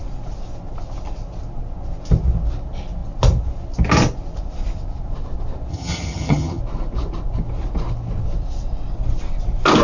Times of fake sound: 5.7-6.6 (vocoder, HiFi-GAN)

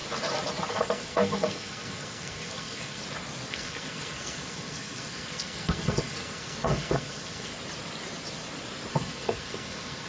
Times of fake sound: 0.7-3.0 (codec, SNAC); 3.5-7.5; 8.9-10.1

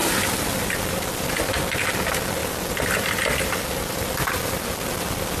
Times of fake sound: 0.0-1.4 (vocoder, BigVGAN v2); 2.4-5.4